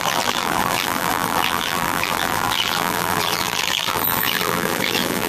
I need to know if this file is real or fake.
fake